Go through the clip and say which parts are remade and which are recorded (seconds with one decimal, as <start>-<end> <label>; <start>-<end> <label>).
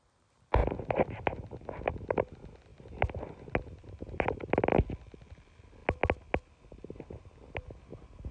0.0-2.7 recorded; 2.7-3.5 remade; 3.5-8.3 recorded